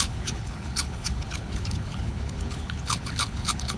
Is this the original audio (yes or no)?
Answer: no